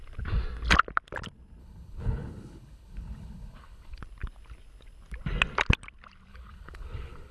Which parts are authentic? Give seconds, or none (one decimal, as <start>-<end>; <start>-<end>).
0.0-1.6; 4.0-6.3